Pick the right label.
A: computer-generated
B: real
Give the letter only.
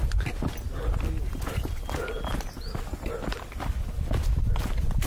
B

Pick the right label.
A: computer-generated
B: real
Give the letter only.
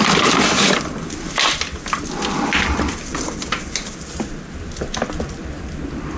A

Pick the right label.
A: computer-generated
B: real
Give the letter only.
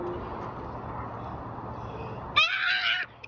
B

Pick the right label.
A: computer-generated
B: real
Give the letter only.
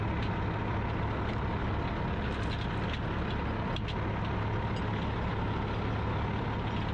B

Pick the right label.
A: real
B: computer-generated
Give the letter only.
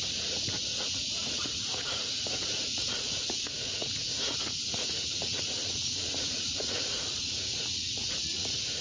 B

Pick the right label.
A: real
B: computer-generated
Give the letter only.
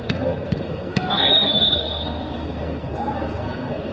B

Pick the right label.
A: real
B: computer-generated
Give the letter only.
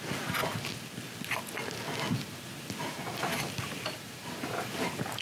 A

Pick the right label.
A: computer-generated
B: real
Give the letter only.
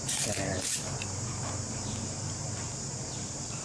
A